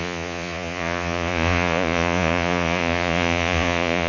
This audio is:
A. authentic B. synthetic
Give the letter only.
B